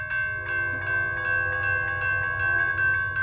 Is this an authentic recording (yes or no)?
yes